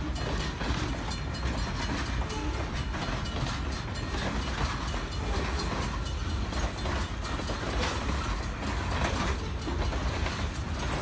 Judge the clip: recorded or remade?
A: recorded